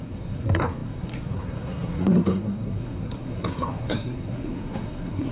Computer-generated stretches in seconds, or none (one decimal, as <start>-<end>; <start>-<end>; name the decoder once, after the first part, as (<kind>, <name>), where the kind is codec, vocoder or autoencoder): 0.0-5.3 (codec, SNAC)